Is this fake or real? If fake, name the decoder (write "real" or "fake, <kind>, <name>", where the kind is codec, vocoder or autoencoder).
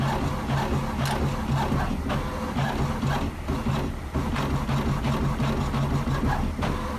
real